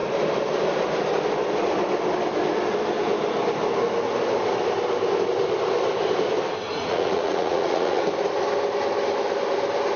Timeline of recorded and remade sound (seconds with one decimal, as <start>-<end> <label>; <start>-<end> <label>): 0.0-6.7 recorded; 6.7-8.0 remade; 8.0-10.0 recorded